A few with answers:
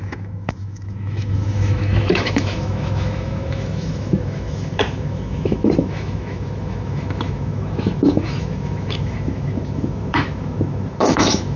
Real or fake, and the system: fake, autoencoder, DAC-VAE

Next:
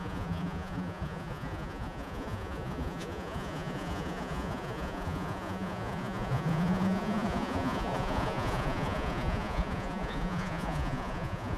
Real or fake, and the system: fake, vocoder, Vocos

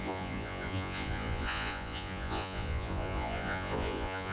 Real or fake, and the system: fake, vocoder, Vocos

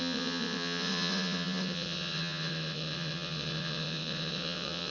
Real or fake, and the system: fake, vocoder, WaveNeXt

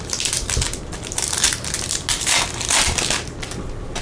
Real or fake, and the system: real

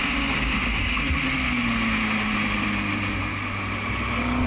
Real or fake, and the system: real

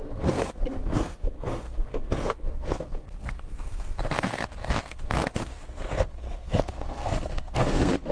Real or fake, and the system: fake, codec, SNAC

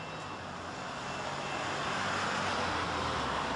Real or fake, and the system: real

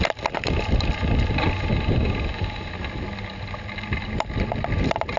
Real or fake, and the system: real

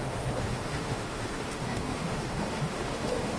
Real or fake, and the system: fake, autoencoder, DAC-VAE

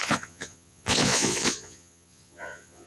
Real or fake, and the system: fake, vocoder, Vocos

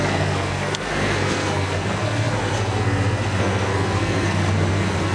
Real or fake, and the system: fake, codec, SNAC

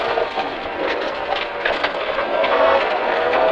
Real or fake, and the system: fake, codec, SNAC